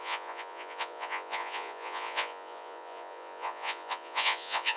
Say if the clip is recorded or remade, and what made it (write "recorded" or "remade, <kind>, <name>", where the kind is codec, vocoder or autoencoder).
remade, vocoder, Vocos